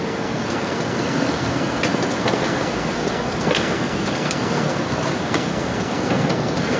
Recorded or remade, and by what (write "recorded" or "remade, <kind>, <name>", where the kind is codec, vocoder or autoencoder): remade, codec, SNAC